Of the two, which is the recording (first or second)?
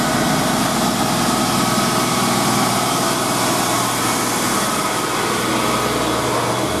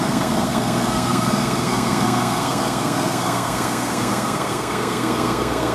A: first